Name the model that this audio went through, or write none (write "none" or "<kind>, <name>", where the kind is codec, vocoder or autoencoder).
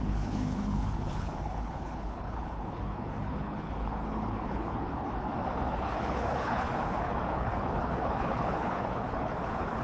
codec, HILCodec